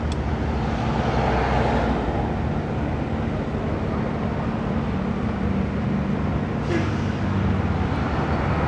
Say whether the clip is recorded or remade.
recorded